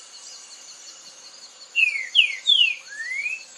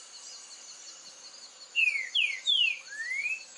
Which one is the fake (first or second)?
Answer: first